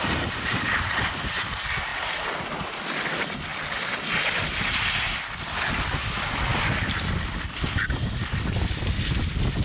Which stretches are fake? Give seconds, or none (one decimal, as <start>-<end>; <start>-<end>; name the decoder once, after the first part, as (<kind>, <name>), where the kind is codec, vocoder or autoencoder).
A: none